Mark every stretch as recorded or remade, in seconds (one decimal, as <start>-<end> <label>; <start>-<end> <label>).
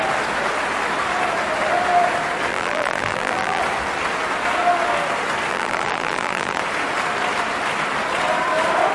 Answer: 0.0-2.5 recorded; 2.5-3.6 remade; 3.6-5.5 recorded; 5.5-6.6 remade; 6.6-8.9 recorded